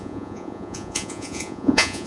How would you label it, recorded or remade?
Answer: remade